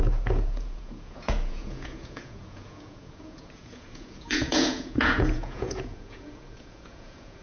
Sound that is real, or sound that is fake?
fake